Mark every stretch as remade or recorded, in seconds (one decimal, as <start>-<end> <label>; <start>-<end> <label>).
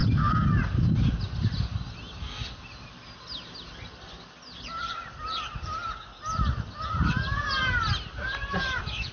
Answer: 0.0-9.1 recorded